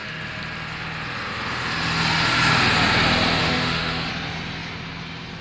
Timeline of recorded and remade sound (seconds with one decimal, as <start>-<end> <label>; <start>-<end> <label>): 0.0-3.4 recorded; 3.4-4.1 remade; 4.1-5.4 recorded